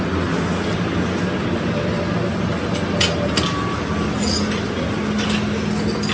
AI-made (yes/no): no